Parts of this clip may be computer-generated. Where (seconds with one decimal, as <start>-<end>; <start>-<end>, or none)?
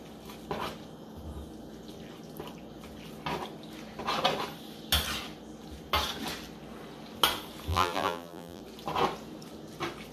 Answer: 7.7-8.6